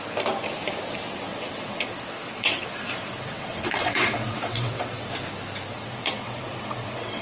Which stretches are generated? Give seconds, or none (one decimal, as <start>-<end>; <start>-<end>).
1.3-5.1; 5.7-7.2